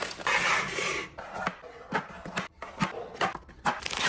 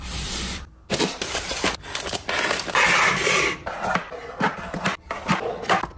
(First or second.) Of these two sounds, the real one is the first